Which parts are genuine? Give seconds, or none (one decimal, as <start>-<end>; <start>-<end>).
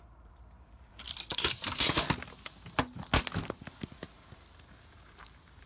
1.3-4.7